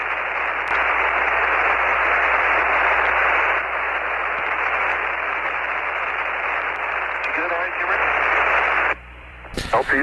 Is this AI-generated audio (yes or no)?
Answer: yes